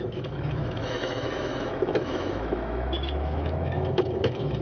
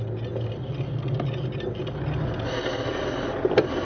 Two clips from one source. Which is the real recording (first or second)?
second